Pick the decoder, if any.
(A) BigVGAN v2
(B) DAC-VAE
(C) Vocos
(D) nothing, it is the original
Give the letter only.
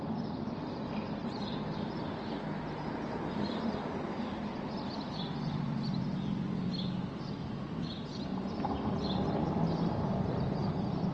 D